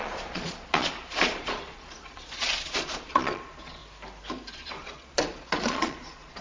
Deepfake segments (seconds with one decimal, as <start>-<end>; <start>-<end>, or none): 0.0-3.8; 4.5-6.4